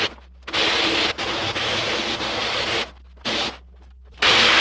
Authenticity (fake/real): real